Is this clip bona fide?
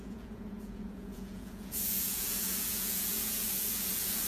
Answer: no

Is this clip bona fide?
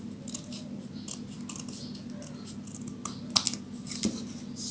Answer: yes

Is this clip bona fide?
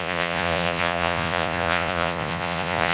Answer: no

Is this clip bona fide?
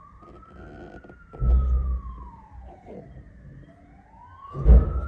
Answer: yes